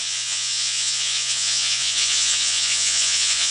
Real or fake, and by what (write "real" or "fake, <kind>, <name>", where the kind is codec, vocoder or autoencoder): fake, vocoder, Vocos